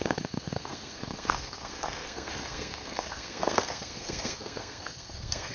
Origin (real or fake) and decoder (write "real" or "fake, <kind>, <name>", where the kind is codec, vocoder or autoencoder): fake, codec, SNAC